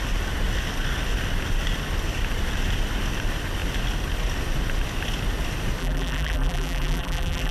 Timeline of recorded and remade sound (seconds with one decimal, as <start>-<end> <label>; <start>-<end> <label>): 0.0-5.8 recorded; 5.8-7.5 remade